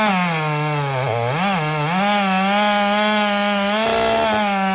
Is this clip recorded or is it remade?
recorded